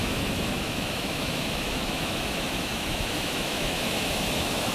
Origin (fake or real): fake